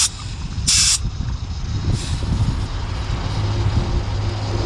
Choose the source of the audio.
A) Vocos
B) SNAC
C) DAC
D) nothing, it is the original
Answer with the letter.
D